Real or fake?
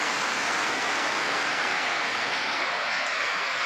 fake